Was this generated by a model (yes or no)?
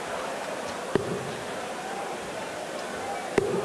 no